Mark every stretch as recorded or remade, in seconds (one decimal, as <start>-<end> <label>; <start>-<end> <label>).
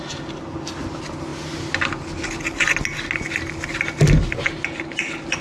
0.0-5.4 recorded